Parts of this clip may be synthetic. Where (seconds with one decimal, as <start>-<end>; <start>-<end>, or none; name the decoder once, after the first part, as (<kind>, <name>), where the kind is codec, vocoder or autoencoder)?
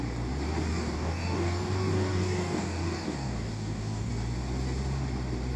0.7-4.1 (codec, DAC)